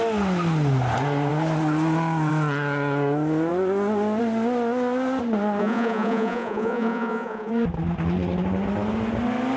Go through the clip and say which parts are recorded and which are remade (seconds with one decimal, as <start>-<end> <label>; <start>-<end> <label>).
0.0-5.6 recorded; 5.6-7.5 remade; 7.5-9.6 recorded